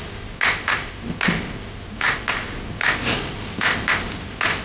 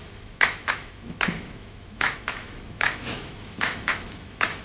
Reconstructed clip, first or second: second